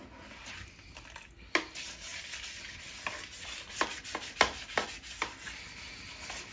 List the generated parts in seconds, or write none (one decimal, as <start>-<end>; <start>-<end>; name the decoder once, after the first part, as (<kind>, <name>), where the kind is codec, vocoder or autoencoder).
none